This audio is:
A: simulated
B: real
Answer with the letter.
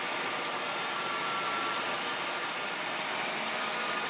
B